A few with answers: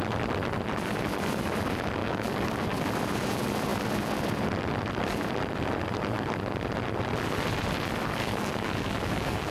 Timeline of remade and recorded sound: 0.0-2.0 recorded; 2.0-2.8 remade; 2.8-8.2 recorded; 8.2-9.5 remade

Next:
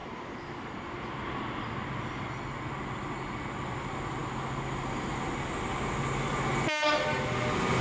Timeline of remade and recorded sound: 0.0-7.8 recorded

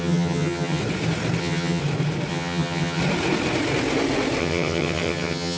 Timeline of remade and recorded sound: 0.0-0.8 remade; 0.8-1.4 recorded; 1.4-1.8 remade; 1.8-2.3 recorded; 2.3-3.0 remade; 3.0-4.4 recorded; 4.4-5.6 remade

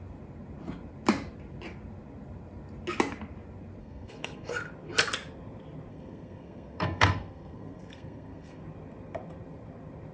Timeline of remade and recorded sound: 0.0-3.8 recorded; 3.8-4.5 remade; 4.5-5.9 recorded; 5.9-8.6 remade; 8.6-10.1 recorded

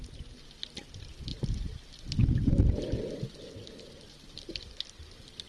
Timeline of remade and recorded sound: 0.0-5.5 recorded